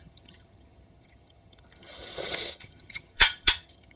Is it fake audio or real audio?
fake